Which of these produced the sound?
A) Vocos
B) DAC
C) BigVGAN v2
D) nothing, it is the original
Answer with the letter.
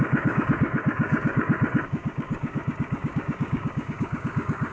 B